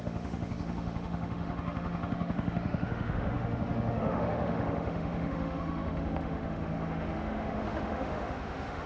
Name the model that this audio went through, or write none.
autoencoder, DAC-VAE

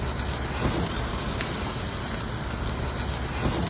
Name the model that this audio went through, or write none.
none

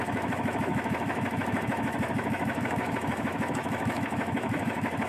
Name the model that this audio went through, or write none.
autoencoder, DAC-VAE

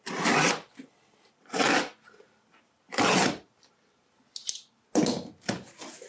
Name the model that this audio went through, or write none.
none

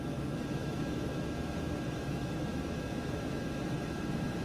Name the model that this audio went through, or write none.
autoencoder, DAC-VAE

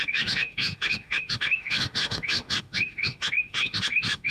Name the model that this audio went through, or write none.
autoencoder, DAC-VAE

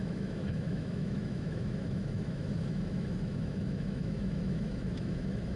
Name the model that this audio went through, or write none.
autoencoder, DAC-VAE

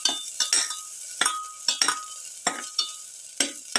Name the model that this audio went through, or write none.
none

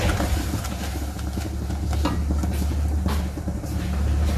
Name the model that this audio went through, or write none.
none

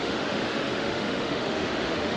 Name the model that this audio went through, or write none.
autoencoder, DAC-VAE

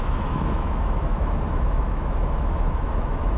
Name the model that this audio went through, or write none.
autoencoder, DAC-VAE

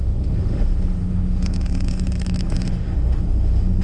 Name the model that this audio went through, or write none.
autoencoder, DAC-VAE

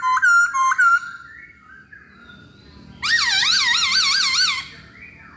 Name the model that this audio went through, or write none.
none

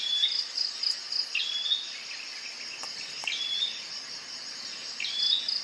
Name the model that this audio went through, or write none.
none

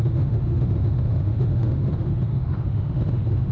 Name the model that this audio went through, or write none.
autoencoder, DAC-VAE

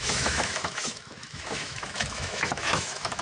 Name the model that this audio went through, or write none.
autoencoder, DAC-VAE